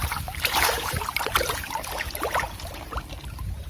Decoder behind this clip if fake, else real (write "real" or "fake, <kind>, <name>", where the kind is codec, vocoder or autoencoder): fake, vocoder, BigVGAN v2